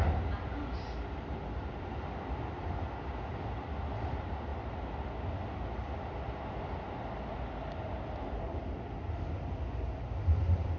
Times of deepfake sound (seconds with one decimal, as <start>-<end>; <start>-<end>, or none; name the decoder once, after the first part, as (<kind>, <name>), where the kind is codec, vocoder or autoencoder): none